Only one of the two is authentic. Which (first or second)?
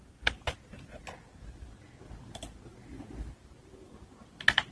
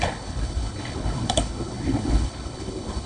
first